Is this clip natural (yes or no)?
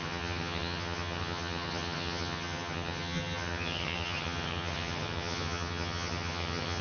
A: no